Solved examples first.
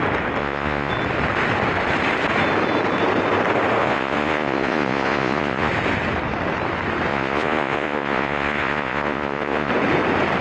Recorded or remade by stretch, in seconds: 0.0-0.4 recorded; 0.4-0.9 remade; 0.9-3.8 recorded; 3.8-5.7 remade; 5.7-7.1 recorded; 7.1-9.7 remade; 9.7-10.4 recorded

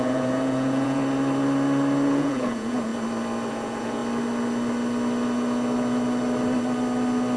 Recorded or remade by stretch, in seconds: 0.0-1.0 remade; 1.0-2.1 recorded; 2.1-2.9 remade; 2.9-3.5 recorded; 3.5-4.0 remade; 4.0-7.4 recorded

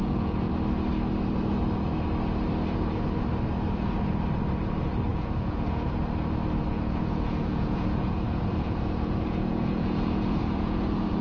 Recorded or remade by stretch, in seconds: 0.0-0.5 remade; 0.5-5.1 recorded; 5.1-5.9 remade; 5.9-6.7 recorded; 6.7-11.2 remade

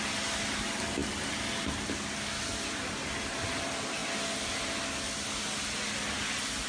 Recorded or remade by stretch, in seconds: 0.0-6.7 recorded

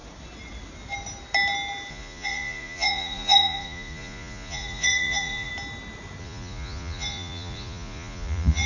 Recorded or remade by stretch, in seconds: 0.0-1.9 recorded; 1.9-5.5 remade; 5.5-6.2 recorded; 6.2-8.7 remade

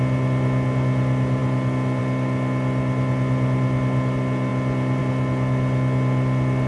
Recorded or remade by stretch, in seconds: 0.0-6.7 recorded

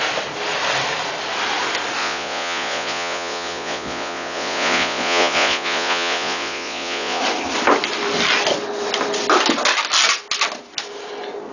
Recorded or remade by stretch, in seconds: 0.0-2.0 recorded; 2.0-7.2 remade; 7.2-11.5 recorded